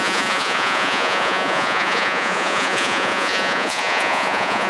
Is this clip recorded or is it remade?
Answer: remade